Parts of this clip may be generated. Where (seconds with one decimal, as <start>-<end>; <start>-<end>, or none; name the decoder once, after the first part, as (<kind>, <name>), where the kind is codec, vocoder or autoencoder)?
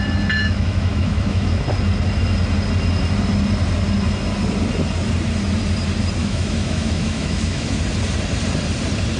0.4-1.6 (autoencoder, DAC-VAE); 6.2-7.8